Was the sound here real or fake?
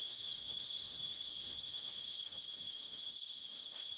fake